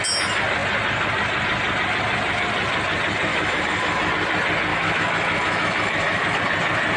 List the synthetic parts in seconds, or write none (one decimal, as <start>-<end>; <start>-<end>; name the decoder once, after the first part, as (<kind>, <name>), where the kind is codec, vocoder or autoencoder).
3.3-4.1 (autoencoder, DAC-VAE); 4.7-6.4